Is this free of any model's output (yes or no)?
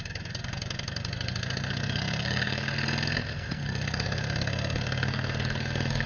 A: no